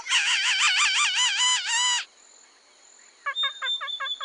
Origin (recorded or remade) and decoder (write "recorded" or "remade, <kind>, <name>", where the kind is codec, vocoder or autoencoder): recorded